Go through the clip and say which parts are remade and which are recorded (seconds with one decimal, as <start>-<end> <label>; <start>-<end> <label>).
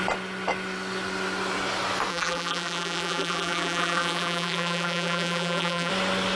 0.0-2.1 recorded; 2.1-5.9 remade; 5.9-6.4 recorded